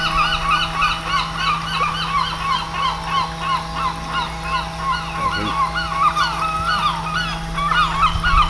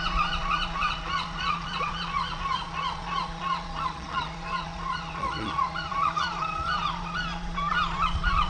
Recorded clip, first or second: first